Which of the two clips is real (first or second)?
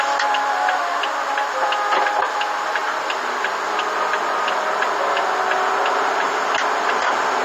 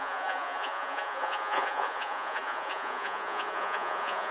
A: first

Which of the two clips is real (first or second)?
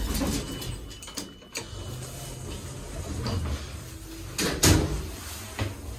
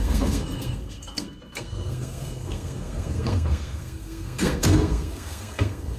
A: first